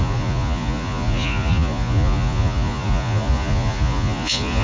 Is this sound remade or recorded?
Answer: remade